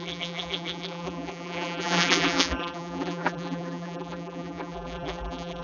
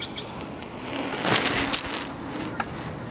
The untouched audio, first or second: second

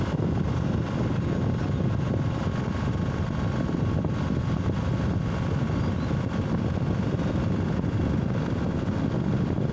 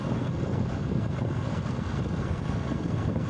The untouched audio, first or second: first